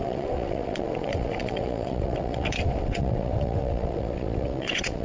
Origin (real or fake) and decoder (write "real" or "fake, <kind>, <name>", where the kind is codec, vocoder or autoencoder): fake, vocoder, WaveNeXt